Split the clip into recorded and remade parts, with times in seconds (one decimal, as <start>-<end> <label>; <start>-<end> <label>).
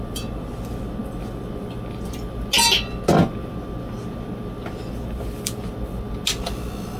0.0-7.0 recorded